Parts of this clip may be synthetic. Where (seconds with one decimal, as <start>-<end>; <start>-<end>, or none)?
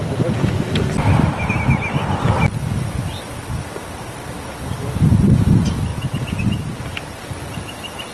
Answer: none